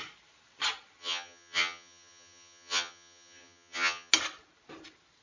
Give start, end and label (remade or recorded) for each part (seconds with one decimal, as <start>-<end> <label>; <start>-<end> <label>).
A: 0.0-1.0 recorded; 1.0-4.1 remade; 4.1-5.2 recorded